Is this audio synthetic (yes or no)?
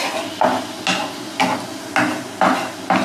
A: no